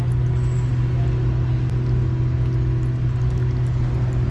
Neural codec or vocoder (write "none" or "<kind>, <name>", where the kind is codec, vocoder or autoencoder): none